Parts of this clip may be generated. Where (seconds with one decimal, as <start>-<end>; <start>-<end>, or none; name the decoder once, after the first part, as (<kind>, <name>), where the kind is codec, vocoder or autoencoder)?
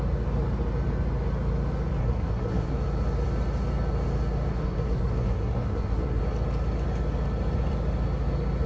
2.0-2.7 (codec, SNAC); 4.5-6.2